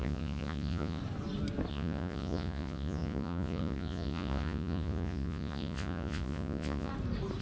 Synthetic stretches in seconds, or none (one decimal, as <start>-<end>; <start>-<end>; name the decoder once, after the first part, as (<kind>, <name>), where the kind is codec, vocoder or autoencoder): 0.0-1.0 (vocoder, Vocos); 1.7-6.9